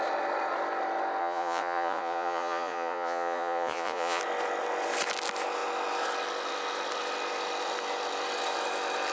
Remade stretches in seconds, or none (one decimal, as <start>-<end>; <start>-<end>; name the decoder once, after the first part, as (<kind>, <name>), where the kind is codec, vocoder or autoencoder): 1.2-4.2 (vocoder, Vocos)